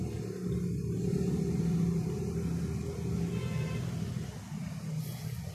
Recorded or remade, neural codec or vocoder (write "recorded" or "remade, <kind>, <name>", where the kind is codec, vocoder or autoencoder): recorded